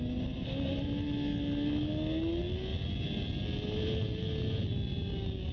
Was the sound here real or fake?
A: real